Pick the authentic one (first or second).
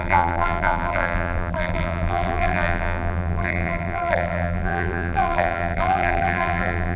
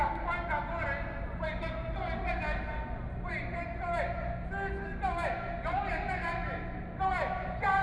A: second